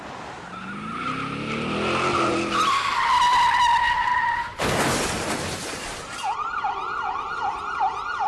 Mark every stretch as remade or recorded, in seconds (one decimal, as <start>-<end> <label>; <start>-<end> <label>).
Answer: 0.0-8.3 recorded